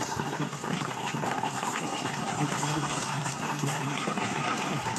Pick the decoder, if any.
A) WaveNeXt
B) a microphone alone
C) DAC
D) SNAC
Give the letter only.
D